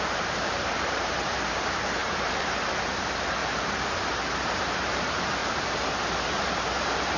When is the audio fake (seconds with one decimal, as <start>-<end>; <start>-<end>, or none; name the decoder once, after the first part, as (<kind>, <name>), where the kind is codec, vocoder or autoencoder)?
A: 0.0-3.4 (vocoder, BigVGAN v2); 4.1-5.4

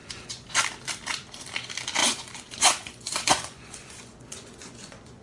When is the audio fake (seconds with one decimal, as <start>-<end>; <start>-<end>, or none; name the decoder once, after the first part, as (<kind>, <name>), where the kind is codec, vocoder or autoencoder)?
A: 0.0-0.6 (vocoder, Vocos); 2.0-5.2